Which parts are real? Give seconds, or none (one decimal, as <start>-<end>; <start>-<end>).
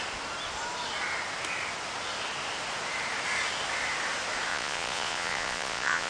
0.0-4.5